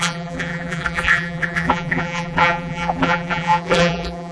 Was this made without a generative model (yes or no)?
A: no